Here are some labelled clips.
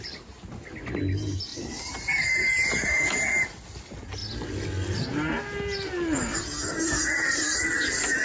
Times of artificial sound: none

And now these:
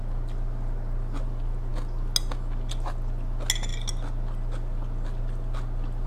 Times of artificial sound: none

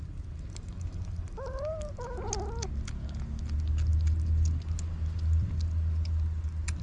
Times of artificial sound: none

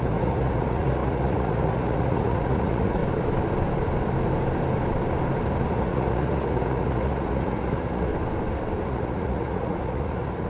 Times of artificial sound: 0.0-3.0; 5.7-8.1; 8.8-10.5

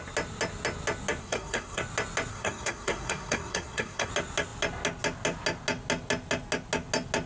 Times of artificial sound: 1.2-1.8; 2.3-4.1

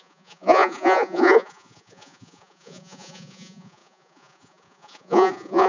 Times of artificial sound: 0.0-5.7